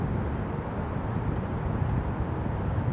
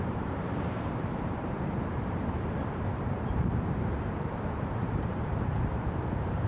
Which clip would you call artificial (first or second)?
second